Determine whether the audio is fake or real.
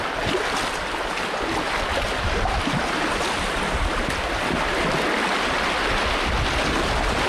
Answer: real